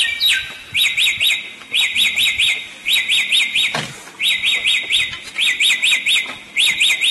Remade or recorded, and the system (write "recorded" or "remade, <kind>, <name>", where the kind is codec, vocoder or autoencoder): recorded